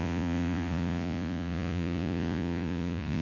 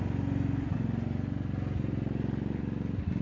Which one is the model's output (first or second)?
first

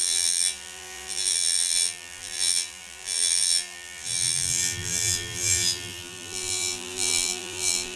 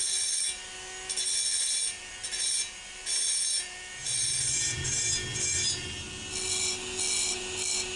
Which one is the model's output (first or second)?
first